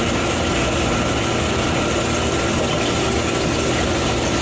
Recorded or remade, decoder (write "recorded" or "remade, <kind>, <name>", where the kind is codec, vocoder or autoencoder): recorded